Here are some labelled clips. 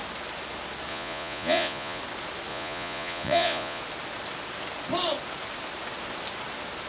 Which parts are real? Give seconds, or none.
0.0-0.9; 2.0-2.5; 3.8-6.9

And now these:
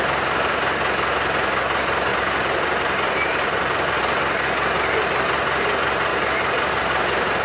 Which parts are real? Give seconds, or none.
0.0-2.1; 4.0-6.1; 6.7-7.4

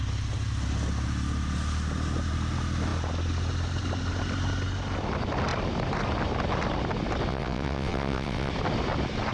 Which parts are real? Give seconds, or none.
0.0-7.3; 8.5-9.3

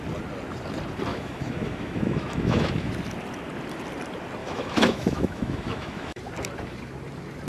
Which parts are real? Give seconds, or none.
0.0-1.1; 2.9-4.4; 6.2-7.5